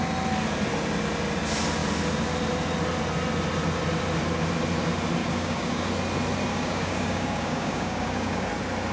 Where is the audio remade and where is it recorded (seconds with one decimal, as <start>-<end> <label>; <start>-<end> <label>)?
0.0-5.2 recorded; 5.2-5.9 remade; 5.9-6.5 recorded; 6.5-8.5 remade; 8.5-8.9 recorded